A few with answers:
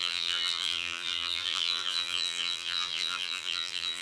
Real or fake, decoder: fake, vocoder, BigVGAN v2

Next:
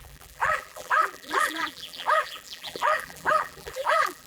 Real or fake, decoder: fake, vocoder, BigVGAN v2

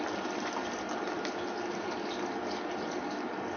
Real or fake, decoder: real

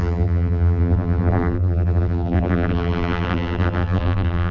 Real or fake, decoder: fake, vocoder, BigVGAN v2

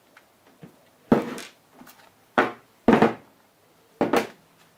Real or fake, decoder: real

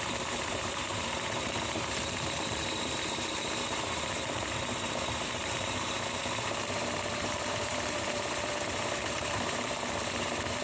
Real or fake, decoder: fake, vocoder, BigVGAN v2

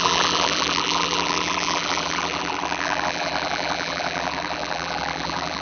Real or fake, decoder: fake, vocoder, BigVGAN v2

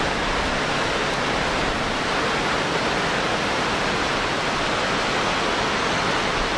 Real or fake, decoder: real